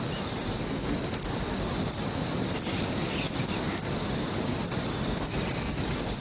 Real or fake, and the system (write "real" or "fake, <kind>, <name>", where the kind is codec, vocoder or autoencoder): real